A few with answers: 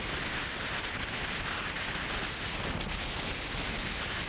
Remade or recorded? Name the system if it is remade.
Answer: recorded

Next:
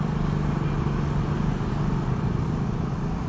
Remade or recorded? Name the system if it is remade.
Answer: recorded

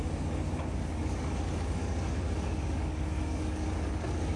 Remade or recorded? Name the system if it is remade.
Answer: remade, codec, DAC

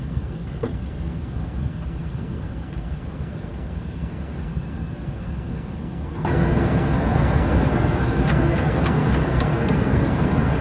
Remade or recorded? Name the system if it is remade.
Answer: remade, codec, SNAC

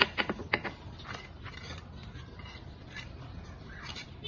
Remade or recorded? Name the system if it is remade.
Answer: recorded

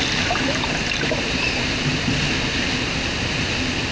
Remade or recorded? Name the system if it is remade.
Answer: recorded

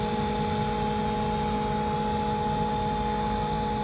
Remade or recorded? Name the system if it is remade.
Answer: recorded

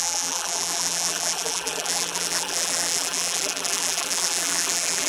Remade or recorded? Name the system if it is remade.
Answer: remade, vocoder, BigVGAN v2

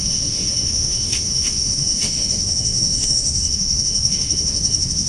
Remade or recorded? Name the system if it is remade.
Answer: remade, autoencoder, DAC-VAE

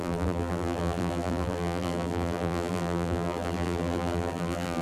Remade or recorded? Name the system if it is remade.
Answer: remade, vocoder, BigVGAN v2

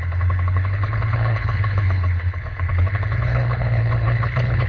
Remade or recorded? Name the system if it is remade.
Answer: remade, codec, HILCodec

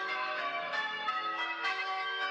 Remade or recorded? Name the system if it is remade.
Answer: remade, autoencoder, DAC-VAE